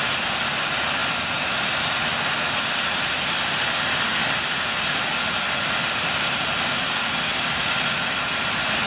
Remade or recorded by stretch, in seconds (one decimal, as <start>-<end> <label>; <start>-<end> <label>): 0.0-8.9 recorded